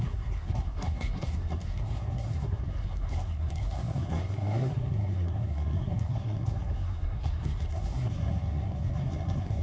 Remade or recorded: remade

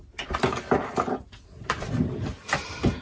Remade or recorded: recorded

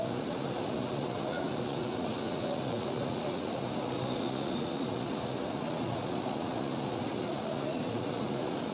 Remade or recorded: remade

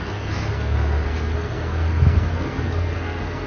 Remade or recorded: remade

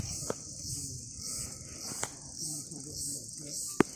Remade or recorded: recorded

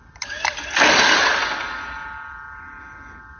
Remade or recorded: recorded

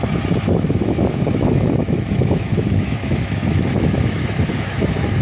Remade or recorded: remade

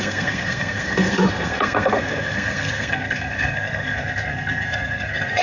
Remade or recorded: remade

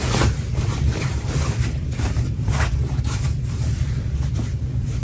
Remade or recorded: recorded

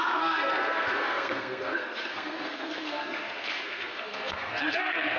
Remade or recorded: remade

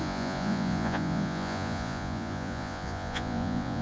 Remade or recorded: remade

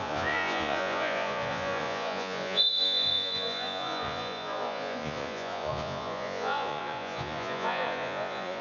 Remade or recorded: remade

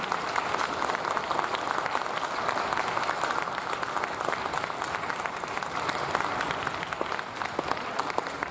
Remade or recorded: recorded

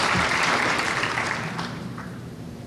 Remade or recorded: remade